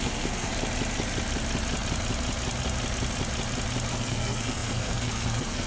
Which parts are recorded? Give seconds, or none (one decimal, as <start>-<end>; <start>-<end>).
0.5-3.9